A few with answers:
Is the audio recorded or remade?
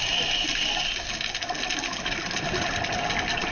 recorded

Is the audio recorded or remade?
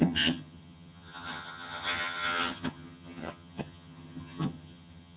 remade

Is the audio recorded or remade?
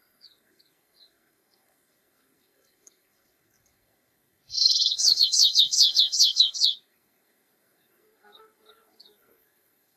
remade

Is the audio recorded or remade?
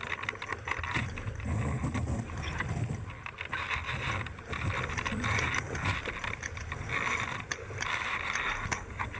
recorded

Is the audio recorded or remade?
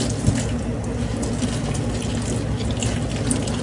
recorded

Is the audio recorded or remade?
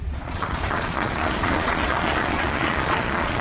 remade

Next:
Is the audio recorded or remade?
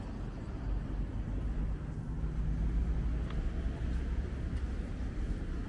recorded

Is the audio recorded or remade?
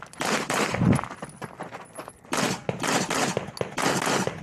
recorded